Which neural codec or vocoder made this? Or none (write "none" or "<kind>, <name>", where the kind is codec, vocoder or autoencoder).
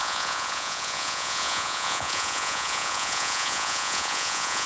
vocoder, Vocos